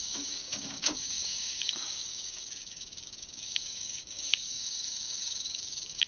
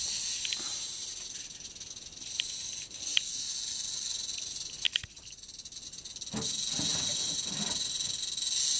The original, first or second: second